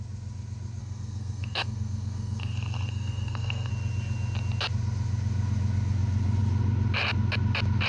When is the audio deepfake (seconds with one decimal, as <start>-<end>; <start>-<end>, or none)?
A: 0.8-3.7